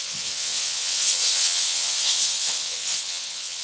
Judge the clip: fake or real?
fake